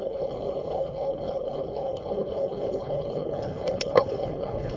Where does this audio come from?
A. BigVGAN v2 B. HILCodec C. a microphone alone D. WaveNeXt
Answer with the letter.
B